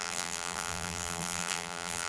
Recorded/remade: remade